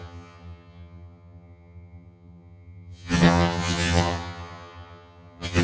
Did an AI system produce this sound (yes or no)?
yes